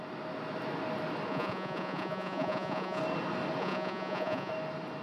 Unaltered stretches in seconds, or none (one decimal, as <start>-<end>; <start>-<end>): 0.0-1.3; 3.0-3.6; 4.5-5.0